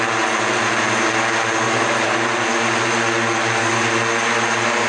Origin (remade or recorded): recorded